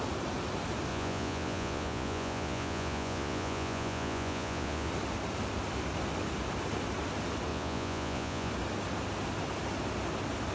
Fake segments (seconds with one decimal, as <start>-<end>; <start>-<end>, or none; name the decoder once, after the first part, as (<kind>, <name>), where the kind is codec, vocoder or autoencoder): 0.9-4.9 (vocoder, Vocos); 7.5-8.5